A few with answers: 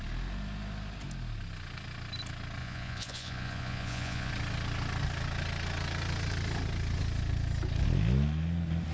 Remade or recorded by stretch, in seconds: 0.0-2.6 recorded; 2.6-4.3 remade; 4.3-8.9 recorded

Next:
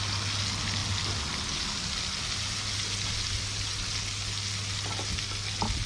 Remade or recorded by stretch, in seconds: 0.0-5.9 recorded

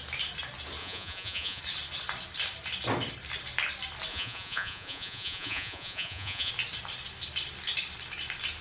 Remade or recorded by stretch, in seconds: 0.0-0.8 recorded; 0.8-1.6 remade; 1.6-4.1 recorded; 4.1-6.5 remade; 6.5-8.6 recorded

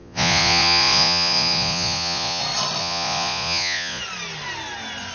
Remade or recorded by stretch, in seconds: 0.0-2.4 remade; 2.4-2.8 recorded; 2.8-4.0 remade; 4.0-5.1 recorded

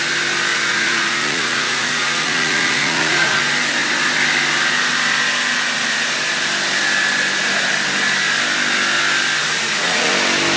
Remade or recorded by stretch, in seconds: 0.0-0.5 recorded; 0.5-3.4 remade; 3.4-9.4 recorded; 9.4-10.1 remade; 10.1-10.6 recorded

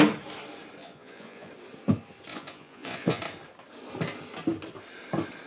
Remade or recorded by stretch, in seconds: 0.0-0.8 recorded; 0.8-1.5 remade; 1.5-2.3 recorded; 2.3-3.2 remade; 3.2-5.5 recorded

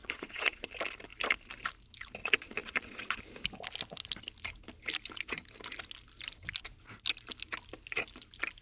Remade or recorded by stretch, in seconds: 0.0-0.7 remade; 0.7-2.2 recorded; 2.2-3.2 remade; 3.2-8.6 recorded

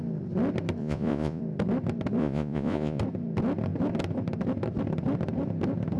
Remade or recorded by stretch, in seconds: 0.0-0.8 recorded; 0.8-1.4 remade; 1.4-2.2 recorded; 2.2-3.0 remade; 3.0-6.0 recorded